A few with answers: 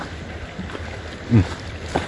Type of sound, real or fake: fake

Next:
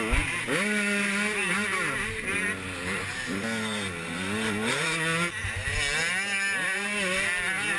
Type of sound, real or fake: real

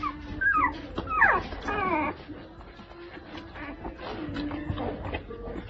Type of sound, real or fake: real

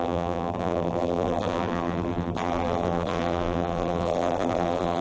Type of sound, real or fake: fake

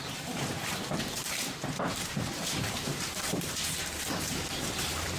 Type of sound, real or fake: fake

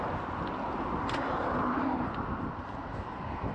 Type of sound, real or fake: real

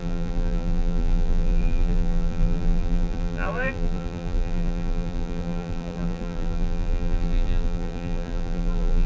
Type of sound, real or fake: fake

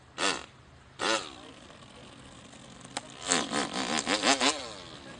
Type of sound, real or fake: real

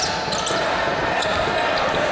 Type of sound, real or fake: real